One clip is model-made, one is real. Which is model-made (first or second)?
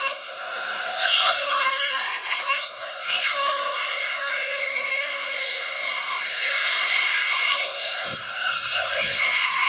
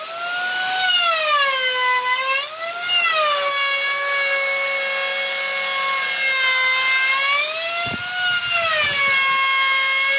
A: first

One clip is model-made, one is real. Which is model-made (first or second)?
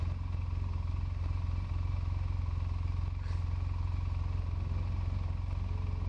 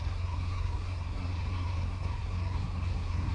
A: second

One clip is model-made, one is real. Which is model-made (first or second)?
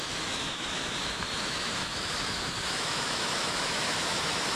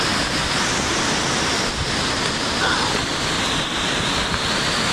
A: first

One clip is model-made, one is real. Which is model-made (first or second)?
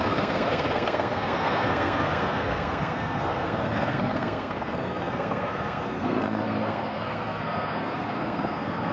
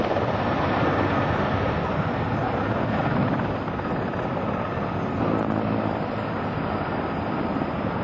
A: first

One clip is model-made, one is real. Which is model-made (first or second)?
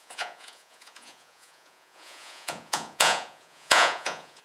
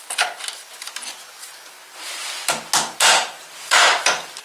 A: first